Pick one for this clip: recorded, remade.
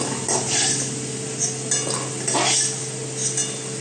recorded